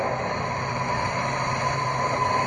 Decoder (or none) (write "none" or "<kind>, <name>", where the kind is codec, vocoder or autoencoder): vocoder, BigVGAN v2